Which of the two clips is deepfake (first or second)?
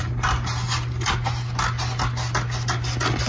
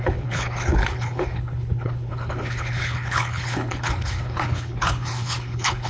second